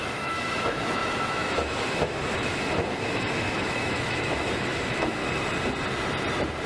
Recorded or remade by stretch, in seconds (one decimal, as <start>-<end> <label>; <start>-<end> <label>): 0.0-5.2 remade; 5.2-6.7 recorded